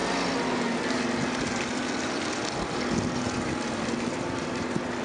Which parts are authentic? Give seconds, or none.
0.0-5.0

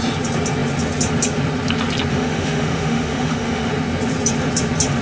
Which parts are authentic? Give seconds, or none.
0.0-2.1; 3.7-5.0

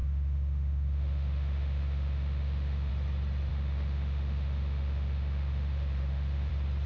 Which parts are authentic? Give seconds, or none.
2.9-3.5; 6.5-6.9

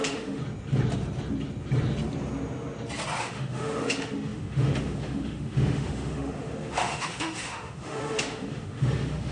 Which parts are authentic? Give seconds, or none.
0.4-3.2